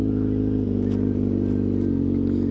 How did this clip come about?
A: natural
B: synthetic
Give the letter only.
A